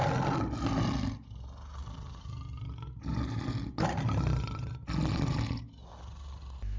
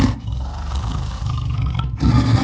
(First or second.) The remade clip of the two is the second